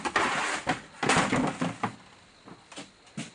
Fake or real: real